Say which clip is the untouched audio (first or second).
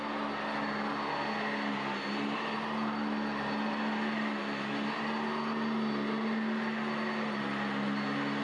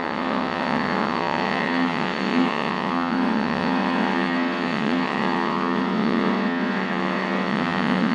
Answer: first